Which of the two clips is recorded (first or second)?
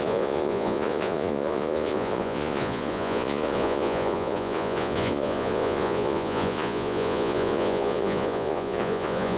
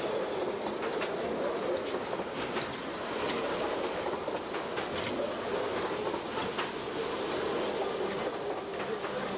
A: second